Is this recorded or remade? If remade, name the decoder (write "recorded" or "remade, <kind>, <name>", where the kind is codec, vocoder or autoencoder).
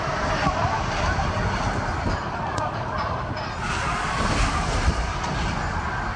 recorded